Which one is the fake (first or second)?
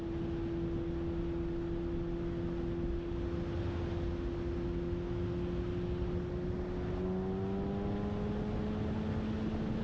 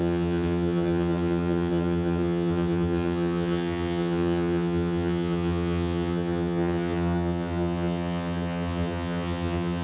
second